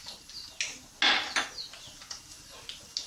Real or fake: real